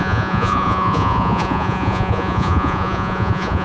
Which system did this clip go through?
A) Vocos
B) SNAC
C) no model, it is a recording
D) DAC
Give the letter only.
A